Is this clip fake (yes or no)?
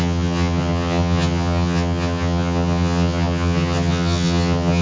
yes